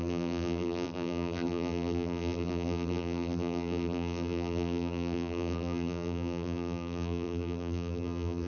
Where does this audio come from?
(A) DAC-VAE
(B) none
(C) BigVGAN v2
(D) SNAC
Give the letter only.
C